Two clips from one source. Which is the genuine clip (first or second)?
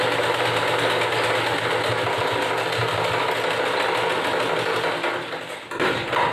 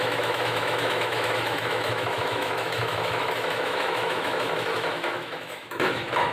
first